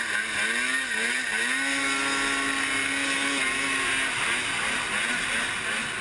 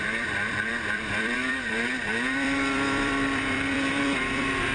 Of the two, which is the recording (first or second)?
first